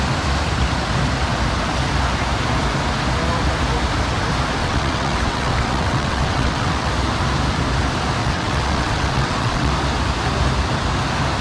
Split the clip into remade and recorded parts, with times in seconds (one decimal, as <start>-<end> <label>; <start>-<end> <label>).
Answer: 0.0-4.6 recorded; 4.6-6.9 remade; 6.9-8.2 recorded; 8.2-9.7 remade; 9.7-11.4 recorded